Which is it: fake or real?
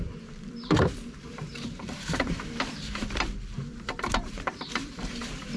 fake